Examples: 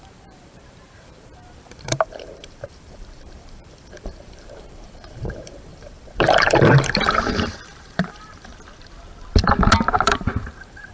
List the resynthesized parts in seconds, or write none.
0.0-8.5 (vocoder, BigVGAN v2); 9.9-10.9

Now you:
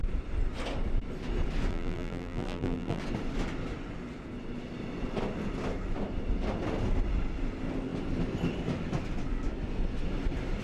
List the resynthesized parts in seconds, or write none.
1.7-3.0 (vocoder, BigVGAN v2)

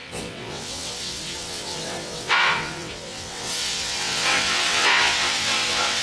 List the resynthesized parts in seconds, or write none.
0.0-6.0 (vocoder, WaveNeXt)